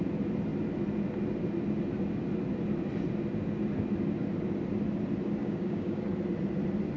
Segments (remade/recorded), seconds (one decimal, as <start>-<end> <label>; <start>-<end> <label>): 0.0-5.4 recorded; 5.4-6.1 remade; 6.1-7.0 recorded